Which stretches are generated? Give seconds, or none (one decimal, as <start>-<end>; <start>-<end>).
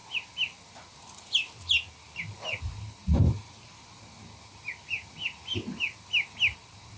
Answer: 3.0-4.0